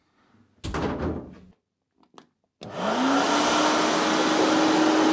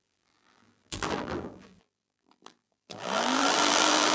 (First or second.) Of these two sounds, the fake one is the second